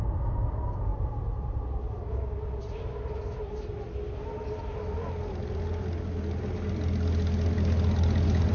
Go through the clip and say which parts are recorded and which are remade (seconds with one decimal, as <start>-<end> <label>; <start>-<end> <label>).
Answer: 0.0-8.5 recorded